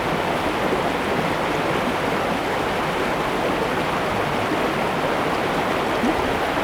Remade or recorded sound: recorded